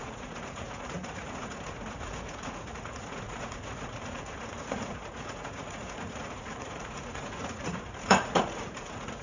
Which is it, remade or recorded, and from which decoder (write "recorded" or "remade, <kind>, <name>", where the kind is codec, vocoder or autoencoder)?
remade, vocoder, Vocos